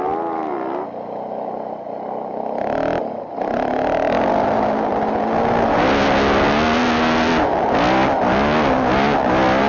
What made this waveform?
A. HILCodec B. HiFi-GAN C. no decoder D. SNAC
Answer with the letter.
C